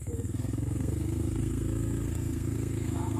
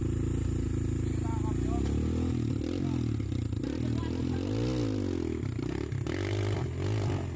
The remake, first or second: first